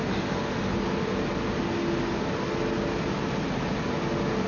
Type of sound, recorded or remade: recorded